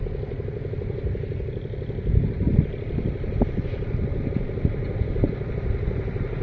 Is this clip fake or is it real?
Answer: real